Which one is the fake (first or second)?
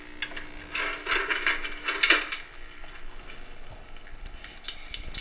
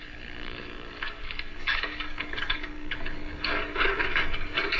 second